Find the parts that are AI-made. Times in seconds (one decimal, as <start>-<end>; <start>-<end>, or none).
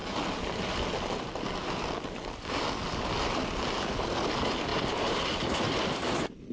none